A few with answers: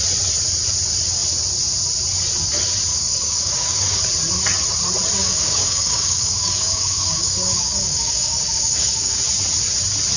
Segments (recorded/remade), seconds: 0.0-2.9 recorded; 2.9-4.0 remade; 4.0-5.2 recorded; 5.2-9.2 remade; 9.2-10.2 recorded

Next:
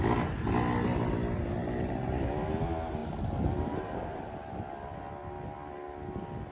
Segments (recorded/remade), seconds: 0.0-1.6 recorded; 1.6-2.6 remade; 2.6-3.0 recorded; 3.0-4.2 remade; 4.2-6.5 recorded

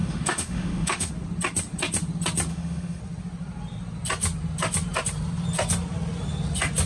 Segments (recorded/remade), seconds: 0.0-1.1 remade; 1.1-2.5 recorded; 2.5-3.0 remade; 3.0-6.9 recorded

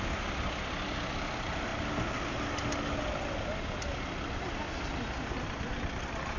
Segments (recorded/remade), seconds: 0.0-6.4 recorded

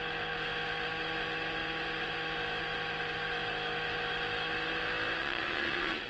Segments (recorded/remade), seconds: 0.0-5.2 recorded; 5.2-6.1 remade

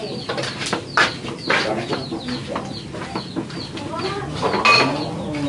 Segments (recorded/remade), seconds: 0.0-5.5 recorded

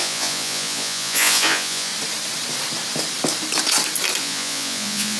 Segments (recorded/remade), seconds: 0.0-1.9 remade; 1.9-4.2 recorded; 4.2-5.2 remade